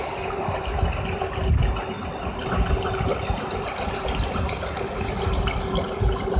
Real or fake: real